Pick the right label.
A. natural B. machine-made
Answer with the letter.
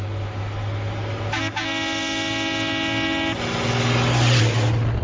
A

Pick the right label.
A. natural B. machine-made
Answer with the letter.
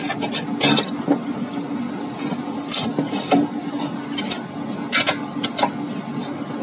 A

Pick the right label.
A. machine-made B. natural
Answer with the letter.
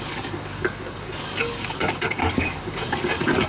A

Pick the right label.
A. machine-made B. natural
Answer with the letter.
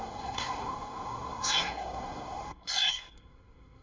A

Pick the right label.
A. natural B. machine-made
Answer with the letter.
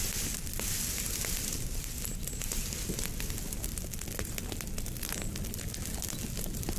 A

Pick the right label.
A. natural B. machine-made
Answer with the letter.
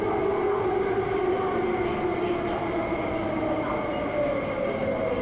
A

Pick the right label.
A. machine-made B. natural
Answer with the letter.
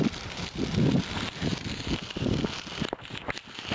A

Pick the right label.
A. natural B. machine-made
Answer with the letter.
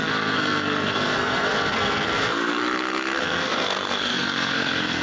B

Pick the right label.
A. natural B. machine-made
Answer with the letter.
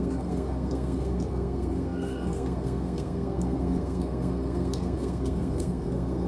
B